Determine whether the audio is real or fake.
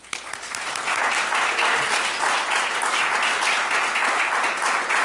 real